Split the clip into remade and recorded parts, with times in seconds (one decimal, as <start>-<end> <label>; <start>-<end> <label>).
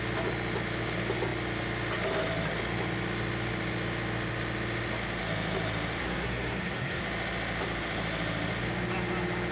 0.0-6.0 recorded; 6.0-7.0 remade; 7.0-9.5 recorded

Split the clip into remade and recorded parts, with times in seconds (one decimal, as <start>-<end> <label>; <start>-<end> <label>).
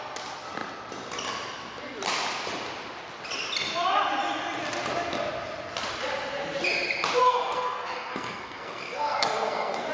0.0-7.2 recorded; 7.2-9.9 remade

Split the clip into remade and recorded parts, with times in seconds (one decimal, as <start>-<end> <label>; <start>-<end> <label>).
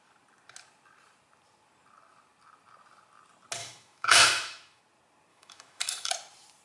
0.0-3.6 recorded; 3.6-4.8 remade; 4.8-5.3 recorded; 5.3-6.1 remade; 6.1-6.6 recorded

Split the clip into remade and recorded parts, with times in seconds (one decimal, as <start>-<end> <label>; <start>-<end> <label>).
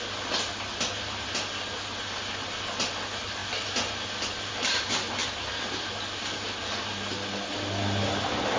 0.0-8.6 recorded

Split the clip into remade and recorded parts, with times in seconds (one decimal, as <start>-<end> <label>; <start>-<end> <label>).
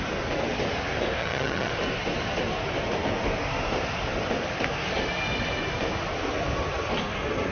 0.0-1.2 recorded; 1.2-1.7 remade; 1.7-7.5 recorded